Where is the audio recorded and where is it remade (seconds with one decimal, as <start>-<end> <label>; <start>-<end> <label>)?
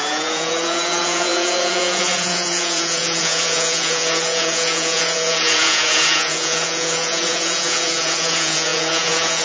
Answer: 0.0-9.4 remade